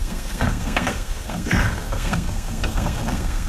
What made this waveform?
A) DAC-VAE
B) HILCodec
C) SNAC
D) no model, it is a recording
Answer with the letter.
C